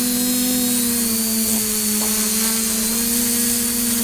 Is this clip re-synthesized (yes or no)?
no